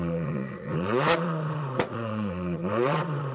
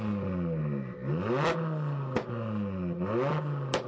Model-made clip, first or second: first